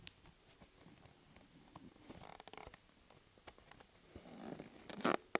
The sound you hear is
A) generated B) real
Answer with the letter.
B